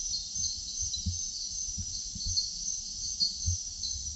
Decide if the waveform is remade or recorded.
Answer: recorded